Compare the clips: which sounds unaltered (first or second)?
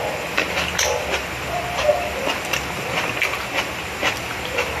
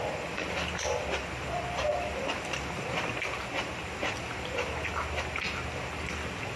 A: first